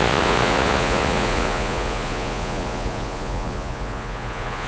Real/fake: fake